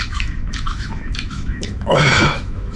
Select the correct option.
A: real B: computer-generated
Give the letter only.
B